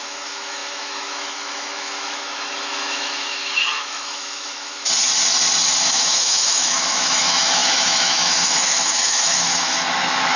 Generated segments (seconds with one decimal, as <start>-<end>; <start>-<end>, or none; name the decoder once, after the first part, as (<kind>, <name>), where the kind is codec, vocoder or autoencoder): 0.0-4.9 (autoencoder, DAC-VAE); 5.8-10.4